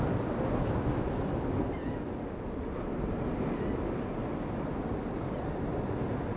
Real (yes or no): yes